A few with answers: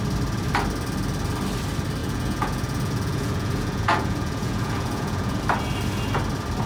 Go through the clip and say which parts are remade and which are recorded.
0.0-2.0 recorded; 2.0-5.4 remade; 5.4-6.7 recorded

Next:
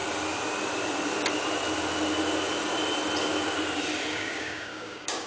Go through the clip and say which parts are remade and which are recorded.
0.0-4.1 recorded; 4.1-5.3 remade

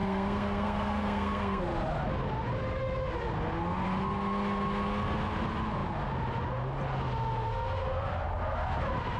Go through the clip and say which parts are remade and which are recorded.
0.0-1.6 remade; 1.6-9.2 recorded

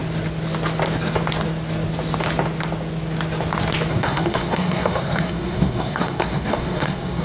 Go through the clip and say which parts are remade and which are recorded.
0.0-3.9 recorded; 3.9-7.2 remade

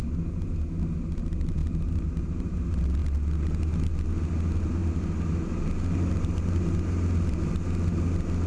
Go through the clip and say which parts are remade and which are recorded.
0.0-8.5 recorded

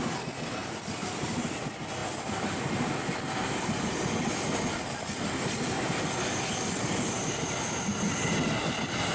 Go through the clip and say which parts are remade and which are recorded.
0.0-9.1 recorded